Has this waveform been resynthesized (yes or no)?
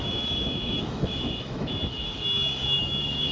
yes